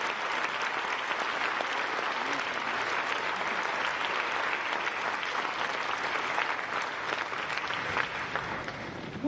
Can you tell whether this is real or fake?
real